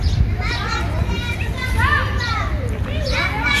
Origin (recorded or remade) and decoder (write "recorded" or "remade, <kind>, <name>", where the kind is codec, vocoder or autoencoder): recorded